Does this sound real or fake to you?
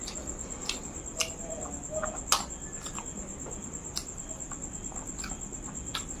real